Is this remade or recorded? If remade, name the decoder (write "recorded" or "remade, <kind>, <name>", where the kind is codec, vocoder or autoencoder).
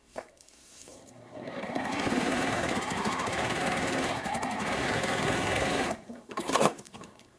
remade, codec, SNAC